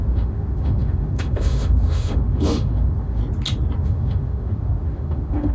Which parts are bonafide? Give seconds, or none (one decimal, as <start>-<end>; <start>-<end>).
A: 3.2-3.8